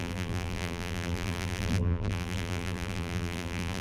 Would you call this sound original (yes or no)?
no